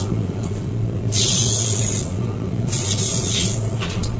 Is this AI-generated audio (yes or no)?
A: yes